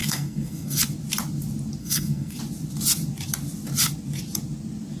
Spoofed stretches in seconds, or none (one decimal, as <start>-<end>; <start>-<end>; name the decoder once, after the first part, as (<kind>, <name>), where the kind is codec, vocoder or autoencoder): 0.0-0.8 (codec, SNAC); 1.8-2.4

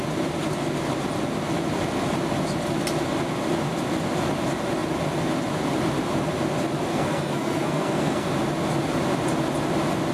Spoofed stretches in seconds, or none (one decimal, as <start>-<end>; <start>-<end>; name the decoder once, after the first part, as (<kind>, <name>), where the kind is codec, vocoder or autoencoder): 6.9-8.3 (codec, SNAC)